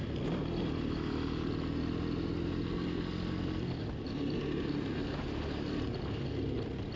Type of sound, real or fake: real